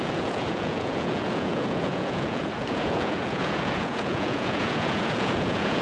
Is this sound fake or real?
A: fake